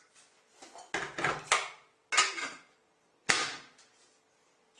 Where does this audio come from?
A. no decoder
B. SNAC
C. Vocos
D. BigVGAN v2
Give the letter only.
A